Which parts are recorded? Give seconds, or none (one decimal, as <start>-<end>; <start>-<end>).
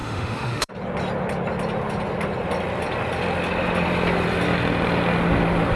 0.7-5.8